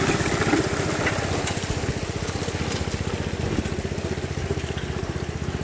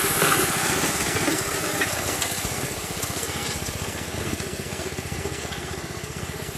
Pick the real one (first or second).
first